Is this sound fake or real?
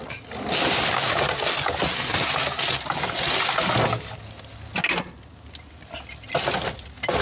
real